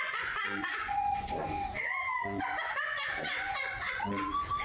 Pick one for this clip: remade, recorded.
remade